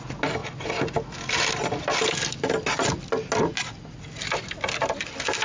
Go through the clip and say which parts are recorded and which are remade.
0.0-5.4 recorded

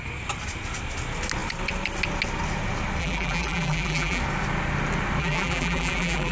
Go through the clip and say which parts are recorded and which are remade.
0.0-3.0 recorded; 3.0-4.2 remade; 4.2-5.2 recorded; 5.2-6.3 remade

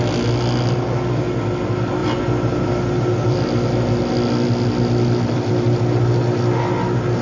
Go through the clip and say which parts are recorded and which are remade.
0.0-7.2 recorded

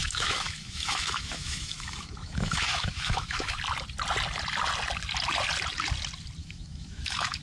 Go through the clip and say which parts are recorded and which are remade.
0.0-3.6 remade; 3.6-6.4 recorded; 6.4-7.4 remade

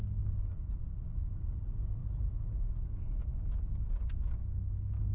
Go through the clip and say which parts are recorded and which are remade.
0.0-2.0 remade; 2.0-2.5 recorded; 2.5-5.1 remade

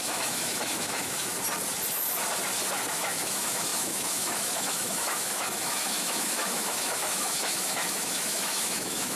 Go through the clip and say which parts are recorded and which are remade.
0.0-1.3 remade; 1.3-2.9 recorded; 2.9-9.2 remade